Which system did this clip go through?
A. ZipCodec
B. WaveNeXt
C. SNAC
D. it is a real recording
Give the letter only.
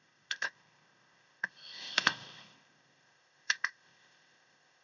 A